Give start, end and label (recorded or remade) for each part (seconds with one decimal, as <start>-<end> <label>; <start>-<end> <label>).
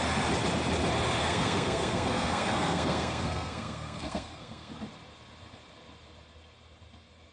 0.0-1.2 recorded; 1.2-4.7 remade; 4.7-7.3 recorded